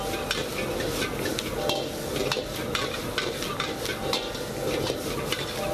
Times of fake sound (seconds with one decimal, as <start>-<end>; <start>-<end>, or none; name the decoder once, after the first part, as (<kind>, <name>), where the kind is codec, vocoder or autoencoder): 2.2-3.0 (vocoder, BigVGAN v2); 3.9-4.5